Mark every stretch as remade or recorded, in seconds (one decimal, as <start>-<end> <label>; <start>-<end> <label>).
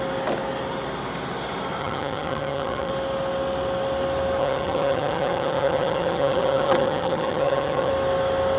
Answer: 0.0-1.8 recorded; 1.8-2.9 remade; 2.9-4.4 recorded; 4.4-7.9 remade; 7.9-8.6 recorded